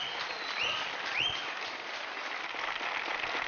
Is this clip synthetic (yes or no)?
no